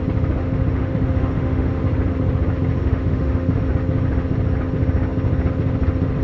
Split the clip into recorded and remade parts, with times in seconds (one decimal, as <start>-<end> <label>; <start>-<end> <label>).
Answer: 0.0-0.4 recorded; 0.4-1.8 remade; 1.8-2.8 recorded; 2.8-3.6 remade; 3.6-6.2 recorded